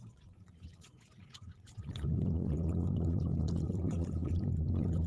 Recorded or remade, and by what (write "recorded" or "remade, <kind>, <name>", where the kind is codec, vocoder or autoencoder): remade, vocoder, Vocos